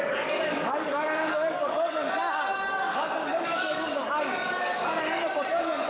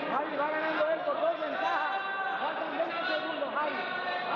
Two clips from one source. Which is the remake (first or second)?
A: first